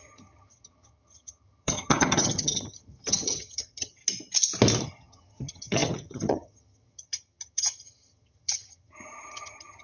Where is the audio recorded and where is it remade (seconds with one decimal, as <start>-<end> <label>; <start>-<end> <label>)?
0.0-4.0 remade; 4.0-4.8 recorded; 4.8-9.8 remade